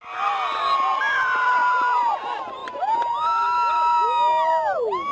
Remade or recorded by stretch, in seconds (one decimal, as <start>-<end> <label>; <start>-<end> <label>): 0.0-5.1 recorded